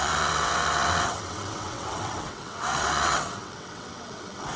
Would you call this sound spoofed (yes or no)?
yes